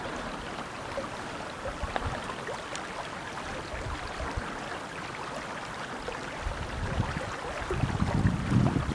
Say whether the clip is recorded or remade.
recorded